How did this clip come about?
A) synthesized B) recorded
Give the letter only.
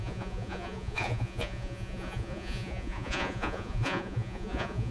A